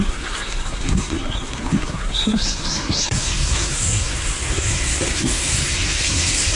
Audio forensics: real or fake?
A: fake